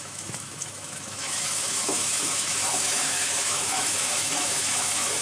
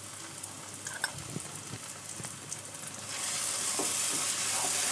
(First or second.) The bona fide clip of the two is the second